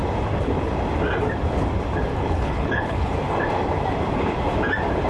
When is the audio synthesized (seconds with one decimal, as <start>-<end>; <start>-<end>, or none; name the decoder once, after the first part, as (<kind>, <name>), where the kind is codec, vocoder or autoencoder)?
2.1-3.1 (codec, HILCodec)